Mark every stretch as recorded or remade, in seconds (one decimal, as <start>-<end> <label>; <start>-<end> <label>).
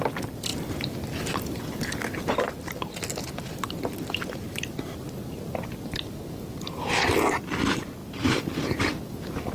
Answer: 0.0-8.0 recorded; 8.0-8.8 remade; 8.8-9.5 recorded